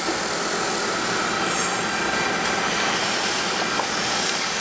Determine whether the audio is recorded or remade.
recorded